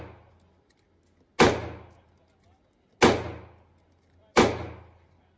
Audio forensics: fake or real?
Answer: real